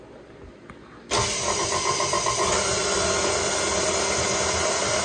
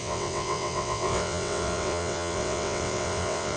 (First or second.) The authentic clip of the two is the first